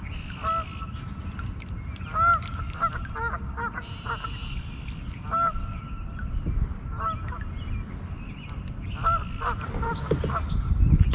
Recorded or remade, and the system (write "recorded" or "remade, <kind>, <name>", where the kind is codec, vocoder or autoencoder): recorded